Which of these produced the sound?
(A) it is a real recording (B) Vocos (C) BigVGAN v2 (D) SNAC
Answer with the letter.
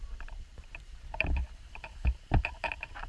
C